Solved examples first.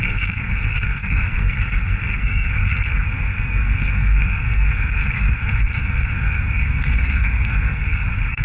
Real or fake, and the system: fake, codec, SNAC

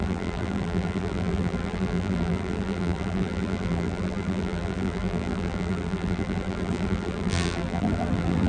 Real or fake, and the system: fake, vocoder, BigVGAN v2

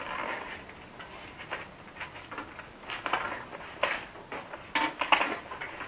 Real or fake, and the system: real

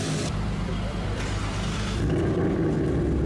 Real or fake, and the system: real